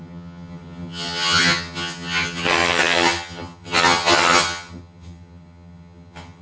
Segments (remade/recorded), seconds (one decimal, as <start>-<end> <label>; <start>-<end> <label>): 0.0-6.4 remade